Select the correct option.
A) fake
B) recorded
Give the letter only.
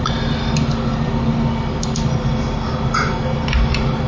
B